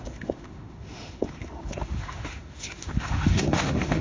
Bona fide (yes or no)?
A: no